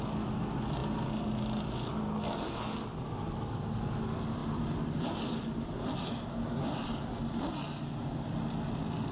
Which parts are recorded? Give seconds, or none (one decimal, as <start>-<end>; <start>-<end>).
0.0-9.1